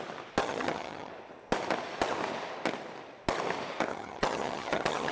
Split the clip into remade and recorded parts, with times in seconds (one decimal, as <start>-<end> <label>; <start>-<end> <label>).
0.0-0.4 recorded; 0.4-1.1 remade; 1.1-3.9 recorded; 3.9-5.1 remade